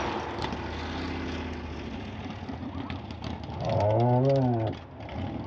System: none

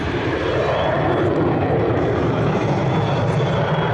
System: none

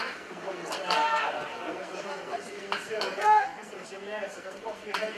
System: codec, SNAC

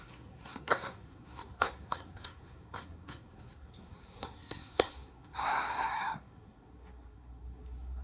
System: codec, SNAC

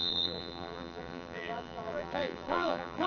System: vocoder, BigVGAN v2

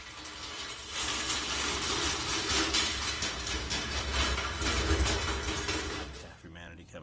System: none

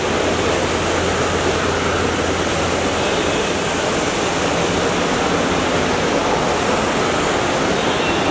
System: none